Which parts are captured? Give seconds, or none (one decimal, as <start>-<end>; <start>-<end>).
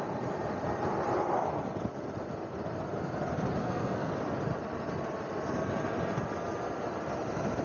0.0-3.6; 4.1-7.6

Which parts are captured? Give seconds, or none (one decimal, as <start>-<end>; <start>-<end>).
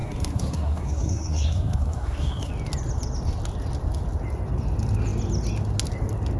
2.5-6.4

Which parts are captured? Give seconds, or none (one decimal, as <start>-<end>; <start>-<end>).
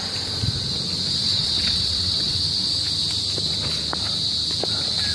0.0-1.2; 2.4-5.1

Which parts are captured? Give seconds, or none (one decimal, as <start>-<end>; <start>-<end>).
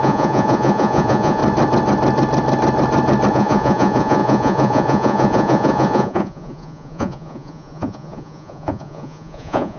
1.4-3.3